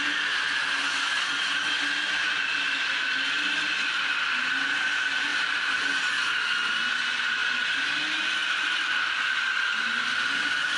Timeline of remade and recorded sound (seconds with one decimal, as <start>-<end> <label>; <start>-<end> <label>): 0.0-10.8 recorded